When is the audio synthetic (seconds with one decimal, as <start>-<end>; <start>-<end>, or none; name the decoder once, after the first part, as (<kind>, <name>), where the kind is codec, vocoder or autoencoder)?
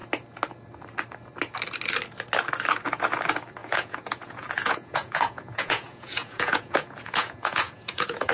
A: 3.6-8.3 (vocoder, Vocos)